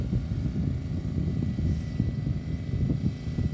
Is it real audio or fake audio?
real